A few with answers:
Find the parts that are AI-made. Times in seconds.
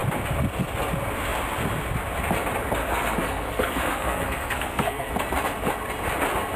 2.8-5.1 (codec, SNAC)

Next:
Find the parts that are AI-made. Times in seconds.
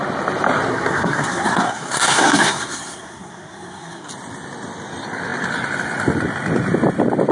0.7-4.1 (codec, SNAC)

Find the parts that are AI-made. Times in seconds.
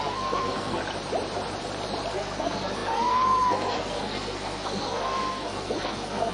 0.0-0.8 (codec, SNAC); 2.1-6.3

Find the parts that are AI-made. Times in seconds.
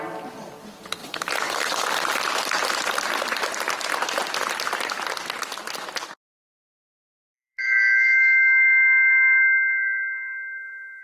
6.4-11.0 (codec, SNAC)